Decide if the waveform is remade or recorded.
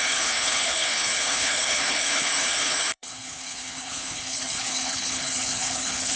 remade